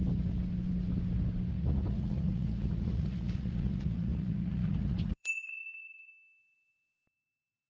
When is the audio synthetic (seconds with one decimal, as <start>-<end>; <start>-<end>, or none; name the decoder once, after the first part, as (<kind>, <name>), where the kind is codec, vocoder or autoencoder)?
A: 1.5-6.1 (vocoder, Vocos)